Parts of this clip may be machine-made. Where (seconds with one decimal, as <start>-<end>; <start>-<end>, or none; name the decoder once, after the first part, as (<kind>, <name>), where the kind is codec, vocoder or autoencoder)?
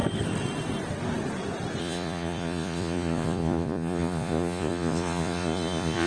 1.8-6.1 (vocoder, Vocos)